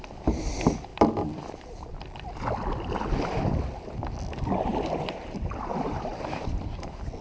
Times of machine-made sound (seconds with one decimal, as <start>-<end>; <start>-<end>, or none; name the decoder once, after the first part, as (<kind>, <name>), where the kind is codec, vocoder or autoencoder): 0.9-2.0 (vocoder, BigVGAN v2); 6.1-6.7